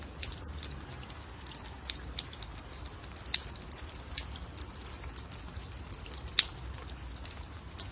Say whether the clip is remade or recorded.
recorded